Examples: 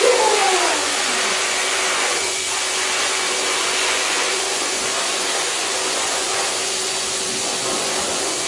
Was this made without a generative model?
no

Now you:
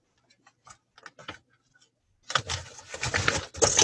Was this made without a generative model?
yes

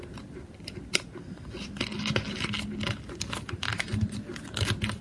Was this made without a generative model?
yes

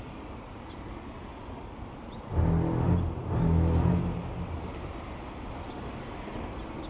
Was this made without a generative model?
yes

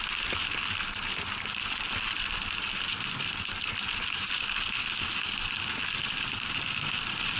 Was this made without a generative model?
yes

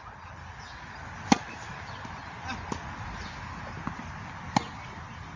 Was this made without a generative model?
yes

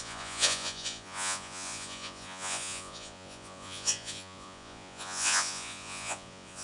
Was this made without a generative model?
no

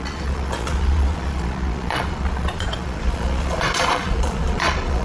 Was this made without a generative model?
no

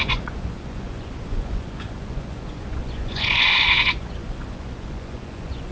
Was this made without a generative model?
no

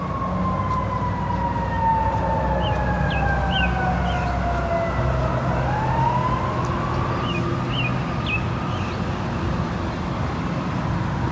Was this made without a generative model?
yes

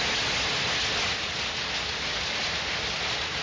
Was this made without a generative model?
yes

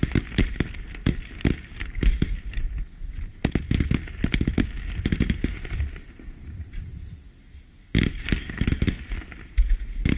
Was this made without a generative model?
yes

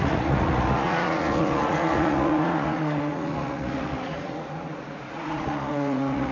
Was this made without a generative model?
no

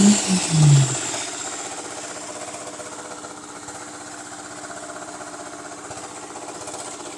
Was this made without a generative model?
yes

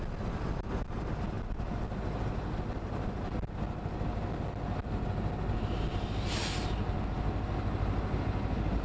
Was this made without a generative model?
yes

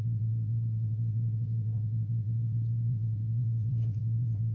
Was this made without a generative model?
no